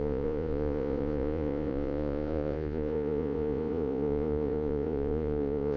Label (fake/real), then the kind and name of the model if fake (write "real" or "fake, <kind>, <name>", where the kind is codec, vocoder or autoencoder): fake, vocoder, Vocos